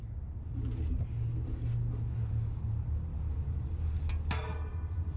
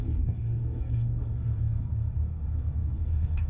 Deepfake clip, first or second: second